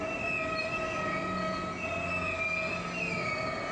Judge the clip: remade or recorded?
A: recorded